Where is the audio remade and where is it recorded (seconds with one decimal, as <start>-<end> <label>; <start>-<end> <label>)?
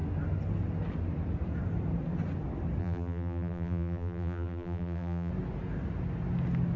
0.0-2.8 recorded; 2.8-5.3 remade; 5.3-6.8 recorded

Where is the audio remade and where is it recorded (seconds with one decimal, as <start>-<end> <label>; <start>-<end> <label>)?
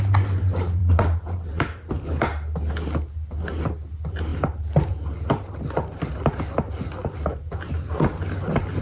0.0-0.8 recorded; 0.8-1.6 remade; 1.6-8.8 recorded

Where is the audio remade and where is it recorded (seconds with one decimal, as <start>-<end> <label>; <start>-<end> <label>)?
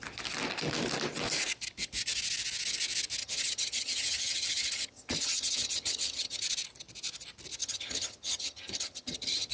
0.0-3.2 recorded; 3.2-6.4 remade; 6.4-7.6 recorded; 7.6-9.5 remade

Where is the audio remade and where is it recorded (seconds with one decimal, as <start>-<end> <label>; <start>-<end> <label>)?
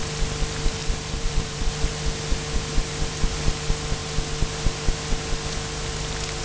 0.0-0.8 recorded; 0.8-1.7 remade; 1.7-6.4 recorded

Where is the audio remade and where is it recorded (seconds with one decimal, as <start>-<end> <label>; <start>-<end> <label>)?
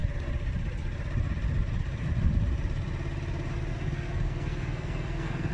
0.0-3.7 recorded; 3.7-5.5 remade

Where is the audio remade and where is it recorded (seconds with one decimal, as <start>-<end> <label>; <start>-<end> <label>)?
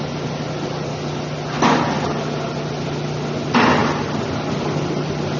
0.0-5.4 recorded